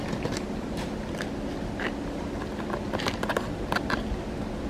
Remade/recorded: recorded